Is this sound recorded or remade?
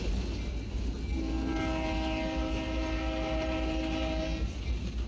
recorded